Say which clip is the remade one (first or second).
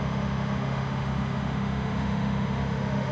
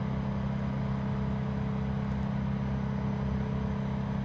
first